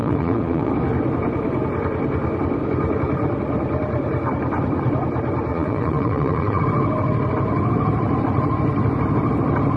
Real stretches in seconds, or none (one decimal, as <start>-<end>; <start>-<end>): 0.7-5.5; 6.6-9.8